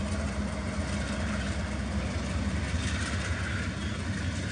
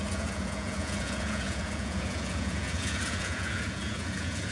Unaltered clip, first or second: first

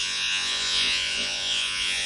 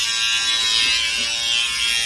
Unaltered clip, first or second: second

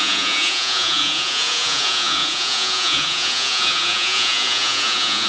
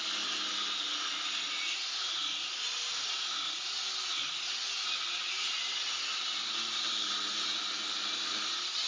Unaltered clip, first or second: second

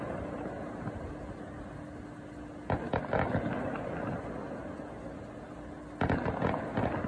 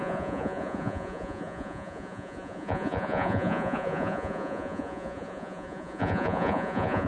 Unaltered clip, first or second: first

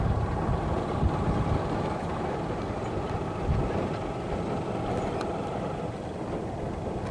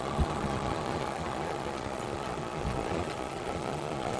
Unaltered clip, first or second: first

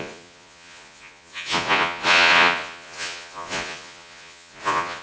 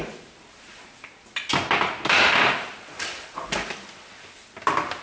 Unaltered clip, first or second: second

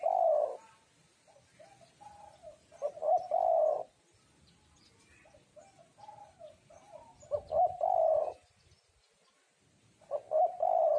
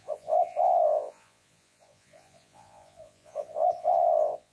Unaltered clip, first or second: first